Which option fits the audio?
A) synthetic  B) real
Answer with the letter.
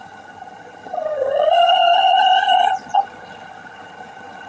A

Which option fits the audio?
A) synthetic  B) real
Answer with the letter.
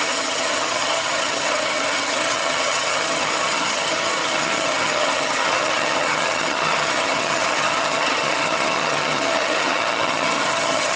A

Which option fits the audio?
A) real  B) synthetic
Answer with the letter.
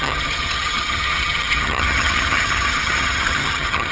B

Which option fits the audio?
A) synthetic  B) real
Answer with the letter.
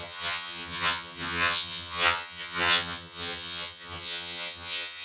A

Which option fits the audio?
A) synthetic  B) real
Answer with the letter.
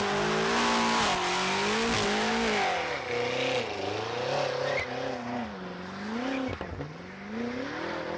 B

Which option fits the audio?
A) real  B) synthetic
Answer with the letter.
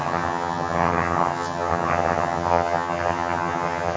B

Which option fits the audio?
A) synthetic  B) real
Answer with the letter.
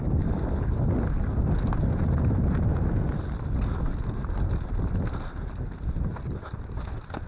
B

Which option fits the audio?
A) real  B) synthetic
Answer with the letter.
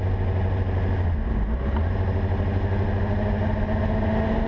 A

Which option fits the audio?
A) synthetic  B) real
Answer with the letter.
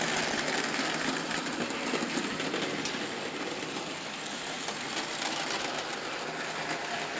B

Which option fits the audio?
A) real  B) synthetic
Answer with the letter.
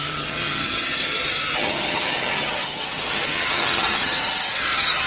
B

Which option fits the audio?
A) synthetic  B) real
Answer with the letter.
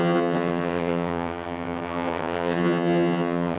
A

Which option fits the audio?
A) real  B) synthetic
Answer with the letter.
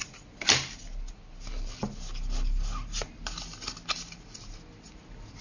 A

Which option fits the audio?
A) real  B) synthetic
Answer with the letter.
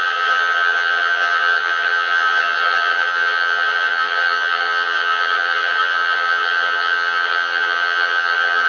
B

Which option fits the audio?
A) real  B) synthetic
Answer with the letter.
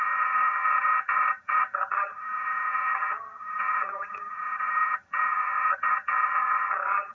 B